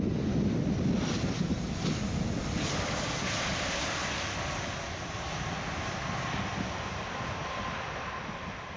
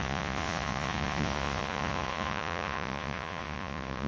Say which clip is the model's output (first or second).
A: second